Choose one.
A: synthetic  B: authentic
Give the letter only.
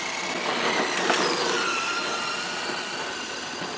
B